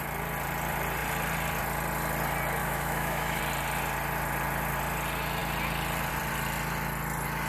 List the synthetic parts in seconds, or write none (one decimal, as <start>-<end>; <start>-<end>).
2.6-3.4